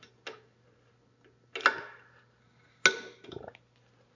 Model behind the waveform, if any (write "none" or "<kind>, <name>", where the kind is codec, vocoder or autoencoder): none